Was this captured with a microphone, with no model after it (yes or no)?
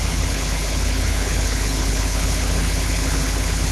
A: no